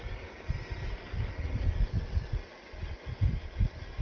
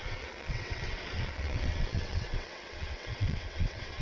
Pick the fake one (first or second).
second